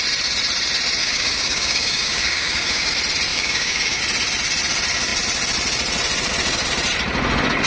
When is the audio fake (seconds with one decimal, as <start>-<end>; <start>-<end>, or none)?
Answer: 1.0-2.9; 3.3-4.0